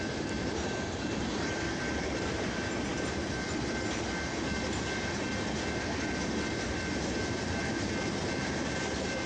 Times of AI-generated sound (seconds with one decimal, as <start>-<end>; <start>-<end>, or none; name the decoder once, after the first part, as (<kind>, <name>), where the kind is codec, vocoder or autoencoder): none